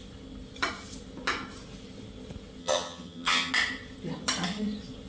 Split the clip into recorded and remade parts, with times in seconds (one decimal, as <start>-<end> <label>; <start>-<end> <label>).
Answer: 0.0-2.6 recorded; 2.6-3.5 remade; 3.5-5.1 recorded